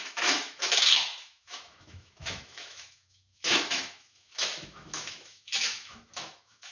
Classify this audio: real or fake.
fake